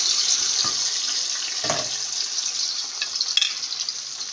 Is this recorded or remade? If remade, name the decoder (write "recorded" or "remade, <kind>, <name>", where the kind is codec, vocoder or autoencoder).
recorded